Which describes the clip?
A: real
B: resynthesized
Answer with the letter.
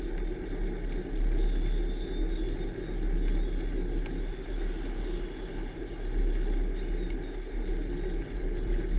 A